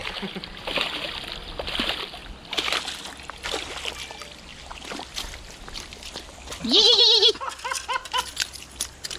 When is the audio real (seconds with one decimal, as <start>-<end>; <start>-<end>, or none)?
1.7-4.5; 7.0-9.2